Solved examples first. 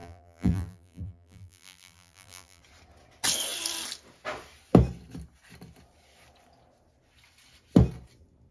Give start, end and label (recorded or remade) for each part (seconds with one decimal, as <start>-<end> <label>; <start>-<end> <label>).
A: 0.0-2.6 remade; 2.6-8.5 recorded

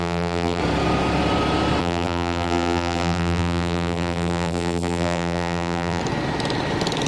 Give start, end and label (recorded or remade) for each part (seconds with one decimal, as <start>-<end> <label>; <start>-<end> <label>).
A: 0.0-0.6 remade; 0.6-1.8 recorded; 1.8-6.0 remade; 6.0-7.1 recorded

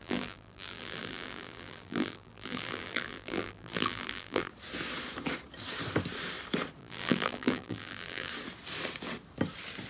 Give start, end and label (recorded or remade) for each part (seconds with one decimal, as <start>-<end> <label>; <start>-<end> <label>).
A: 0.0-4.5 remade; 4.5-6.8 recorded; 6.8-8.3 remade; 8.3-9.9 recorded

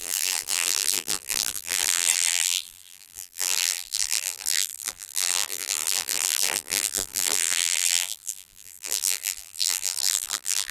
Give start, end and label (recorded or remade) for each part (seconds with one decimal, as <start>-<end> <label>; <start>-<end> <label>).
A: 0.0-10.7 remade